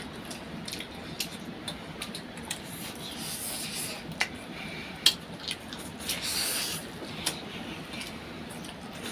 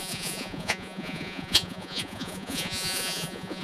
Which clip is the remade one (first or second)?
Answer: second